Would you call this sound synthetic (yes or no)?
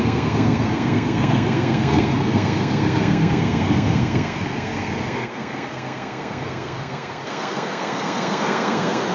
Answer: yes